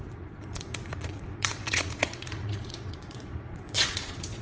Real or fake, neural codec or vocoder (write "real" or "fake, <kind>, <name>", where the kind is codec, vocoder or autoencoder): fake, vocoder, Vocos